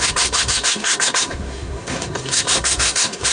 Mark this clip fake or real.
fake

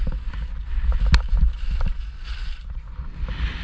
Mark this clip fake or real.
real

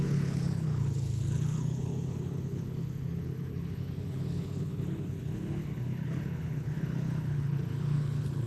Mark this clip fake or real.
fake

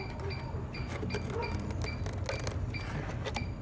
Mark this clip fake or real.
real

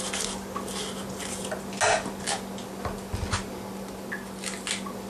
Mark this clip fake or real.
real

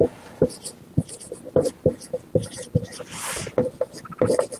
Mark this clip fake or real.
real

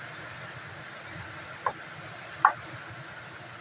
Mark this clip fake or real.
real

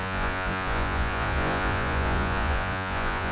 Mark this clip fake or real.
fake